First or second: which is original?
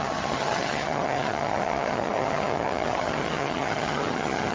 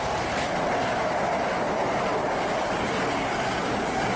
second